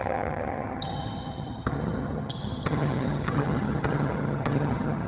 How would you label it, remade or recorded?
remade